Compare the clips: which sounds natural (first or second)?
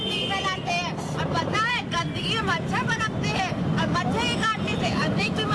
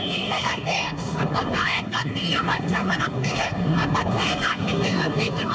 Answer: first